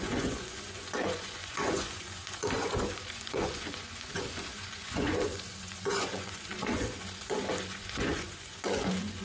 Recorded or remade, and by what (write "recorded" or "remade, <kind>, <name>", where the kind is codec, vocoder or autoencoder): remade, vocoder, Vocos